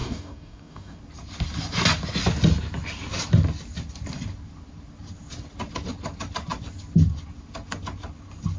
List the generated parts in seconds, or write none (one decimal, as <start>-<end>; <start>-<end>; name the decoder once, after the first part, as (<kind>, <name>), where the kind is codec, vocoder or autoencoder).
0.0-1.0 (codec, DAC)